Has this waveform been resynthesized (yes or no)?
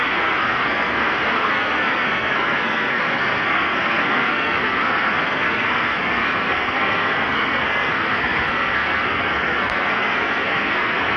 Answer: yes